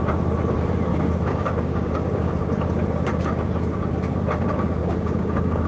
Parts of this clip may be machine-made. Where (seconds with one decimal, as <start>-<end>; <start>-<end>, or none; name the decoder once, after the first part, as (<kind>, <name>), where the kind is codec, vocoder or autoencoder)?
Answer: 0.9-2.3 (codec, DAC); 4.8-5.7